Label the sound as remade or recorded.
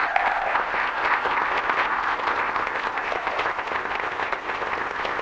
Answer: remade